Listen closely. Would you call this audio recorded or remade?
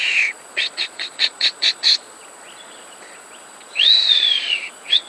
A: remade